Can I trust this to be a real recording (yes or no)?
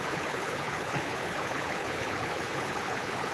no